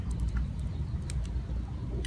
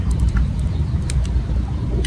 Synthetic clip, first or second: second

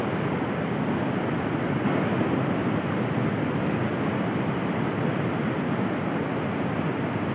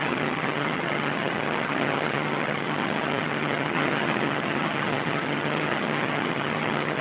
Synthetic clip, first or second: second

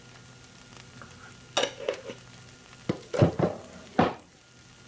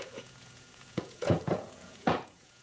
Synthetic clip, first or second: second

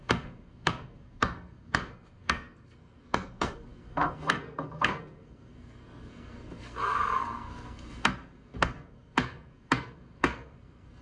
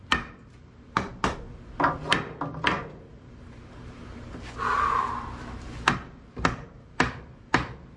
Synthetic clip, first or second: first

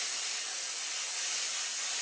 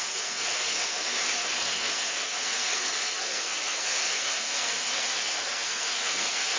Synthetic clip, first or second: second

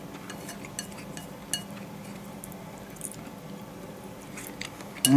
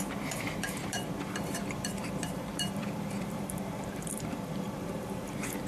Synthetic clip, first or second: second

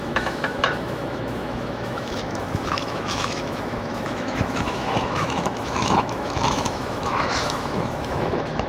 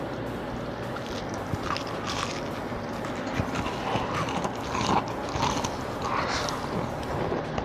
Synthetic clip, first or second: first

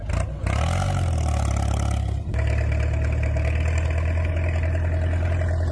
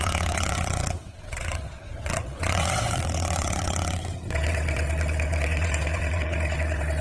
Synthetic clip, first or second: second